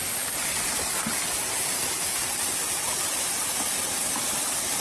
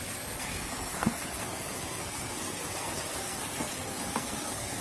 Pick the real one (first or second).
first